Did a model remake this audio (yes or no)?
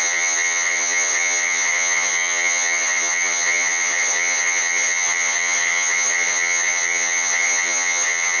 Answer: yes